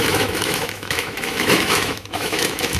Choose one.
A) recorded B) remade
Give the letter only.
B